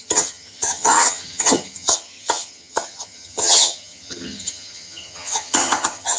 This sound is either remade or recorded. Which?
remade